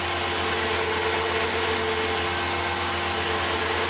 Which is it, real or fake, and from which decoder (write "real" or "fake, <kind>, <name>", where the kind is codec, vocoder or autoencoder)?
real